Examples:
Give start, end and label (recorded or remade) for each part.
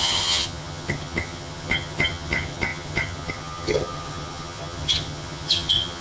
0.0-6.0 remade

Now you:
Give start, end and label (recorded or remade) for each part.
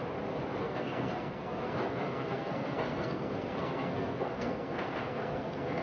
0.0-0.6 recorded; 0.6-5.8 remade